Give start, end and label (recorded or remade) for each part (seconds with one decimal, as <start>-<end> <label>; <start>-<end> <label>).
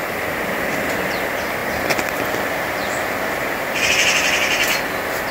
0.0-5.3 recorded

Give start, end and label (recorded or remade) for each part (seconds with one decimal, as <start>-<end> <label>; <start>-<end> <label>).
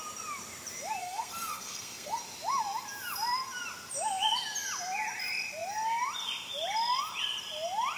0.0-1.0 recorded; 1.0-2.2 remade; 2.2-8.0 recorded